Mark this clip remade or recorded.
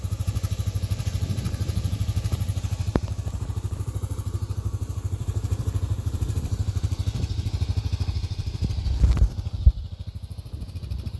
remade